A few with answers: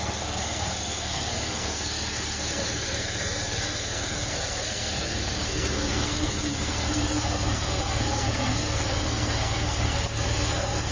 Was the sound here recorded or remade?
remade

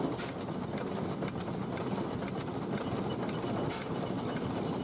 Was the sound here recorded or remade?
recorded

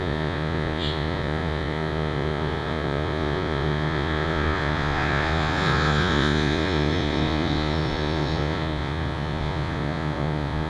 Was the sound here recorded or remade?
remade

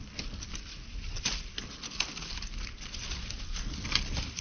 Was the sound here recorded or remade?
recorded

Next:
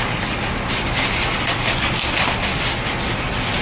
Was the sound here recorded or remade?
recorded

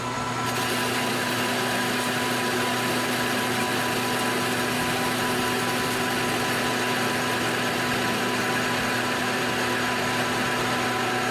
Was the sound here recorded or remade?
recorded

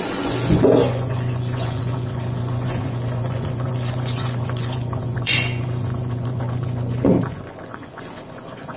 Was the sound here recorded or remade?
remade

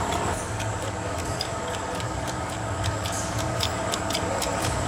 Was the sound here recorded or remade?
remade